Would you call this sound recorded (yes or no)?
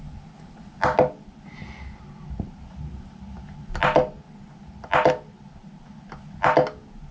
yes